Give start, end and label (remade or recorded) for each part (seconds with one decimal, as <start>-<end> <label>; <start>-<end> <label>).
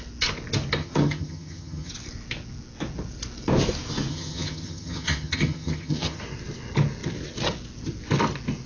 0.0-0.8 recorded; 0.8-1.9 remade; 1.9-4.1 recorded; 4.1-6.2 remade; 6.2-8.7 recorded